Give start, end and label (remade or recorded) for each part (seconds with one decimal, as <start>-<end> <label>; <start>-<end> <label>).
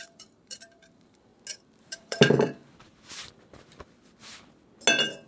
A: 0.0-1.3 remade; 1.3-1.9 recorded; 1.9-2.6 remade; 2.6-5.3 recorded